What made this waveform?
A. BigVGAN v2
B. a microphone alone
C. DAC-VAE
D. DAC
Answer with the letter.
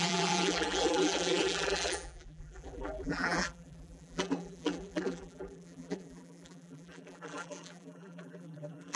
A